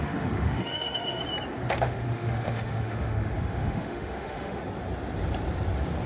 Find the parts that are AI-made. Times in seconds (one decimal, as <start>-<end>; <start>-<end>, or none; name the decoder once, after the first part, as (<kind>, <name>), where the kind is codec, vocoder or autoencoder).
0.0-1.2 (autoencoder, DAC-VAE); 1.7-4.6